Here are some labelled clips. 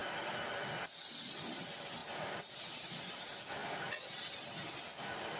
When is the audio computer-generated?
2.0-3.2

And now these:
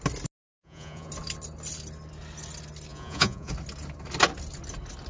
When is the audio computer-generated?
0.5-1.1; 2.9-3.5

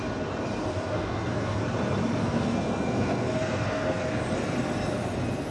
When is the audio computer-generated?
0.7-1.6; 2.2-4.2

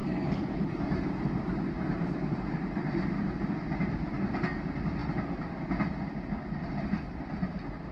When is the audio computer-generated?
0.0-0.8